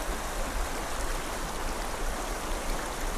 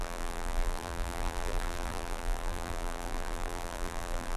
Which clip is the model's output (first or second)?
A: second